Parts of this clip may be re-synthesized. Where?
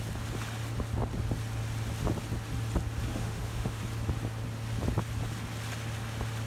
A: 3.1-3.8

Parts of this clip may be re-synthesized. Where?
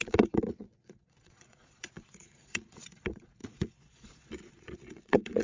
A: 0.0-5.4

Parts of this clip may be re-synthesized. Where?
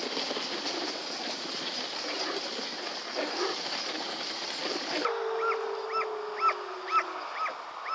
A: none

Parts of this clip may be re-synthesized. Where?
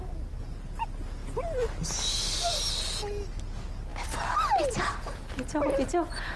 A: none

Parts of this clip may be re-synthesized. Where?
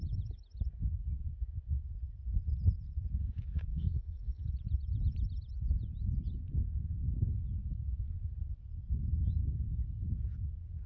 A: 3.7-4.5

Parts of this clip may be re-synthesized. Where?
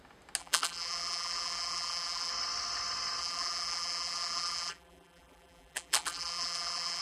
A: 0.4-2.3; 3.2-7.0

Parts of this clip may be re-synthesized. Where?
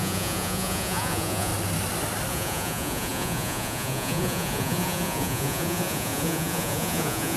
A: 0.0-1.5; 2.3-7.4